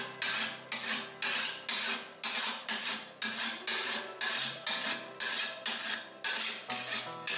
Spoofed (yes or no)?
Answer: no